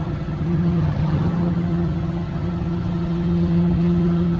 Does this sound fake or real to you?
fake